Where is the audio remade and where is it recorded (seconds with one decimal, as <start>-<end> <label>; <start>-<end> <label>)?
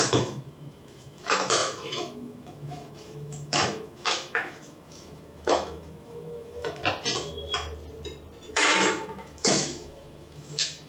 0.0-6.8 remade; 6.8-8.5 recorded; 8.5-10.9 remade